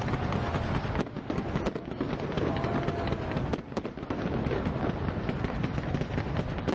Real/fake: real